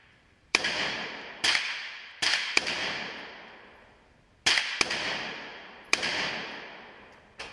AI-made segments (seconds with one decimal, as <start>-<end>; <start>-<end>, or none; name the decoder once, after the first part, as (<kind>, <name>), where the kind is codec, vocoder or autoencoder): 0.0-1.4 (vocoder, BigVGAN v2); 1.8-3.7; 5.5-6.3